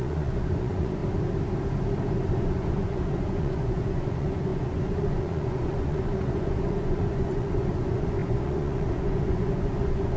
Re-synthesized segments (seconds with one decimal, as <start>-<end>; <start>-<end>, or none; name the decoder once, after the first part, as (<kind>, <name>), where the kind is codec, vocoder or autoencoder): 0.0-1.0 (vocoder, Vocos); 2.4-10.2